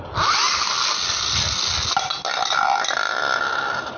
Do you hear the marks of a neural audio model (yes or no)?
no